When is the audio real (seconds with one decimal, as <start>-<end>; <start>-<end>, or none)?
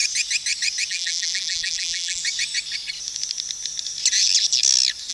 0.0-0.9; 2.2-5.1